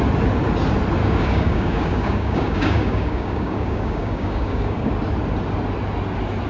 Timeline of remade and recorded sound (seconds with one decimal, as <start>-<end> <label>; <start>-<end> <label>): 0.0-1.0 recorded; 1.0-4.9 remade; 4.9-6.5 recorded